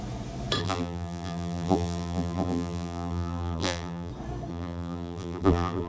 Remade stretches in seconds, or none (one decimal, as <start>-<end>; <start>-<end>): 0.6-4.1; 4.5-5.9